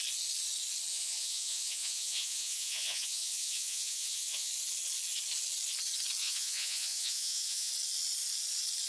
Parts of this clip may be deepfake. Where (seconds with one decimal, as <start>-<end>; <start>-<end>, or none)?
0.9-4.5; 6.2-7.7